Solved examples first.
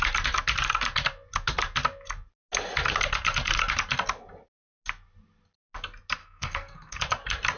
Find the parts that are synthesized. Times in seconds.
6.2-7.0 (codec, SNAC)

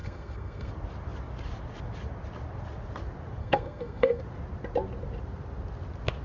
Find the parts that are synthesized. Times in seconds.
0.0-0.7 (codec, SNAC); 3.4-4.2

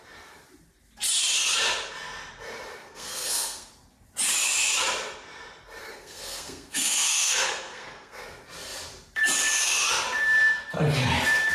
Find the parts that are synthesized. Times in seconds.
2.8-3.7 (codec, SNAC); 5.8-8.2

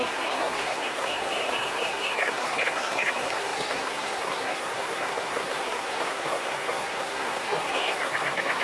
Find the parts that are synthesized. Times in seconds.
0.0-8.6 (codec, SNAC)

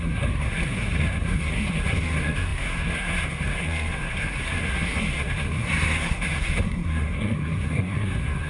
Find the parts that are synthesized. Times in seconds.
0.0-8.5 (codec, SNAC)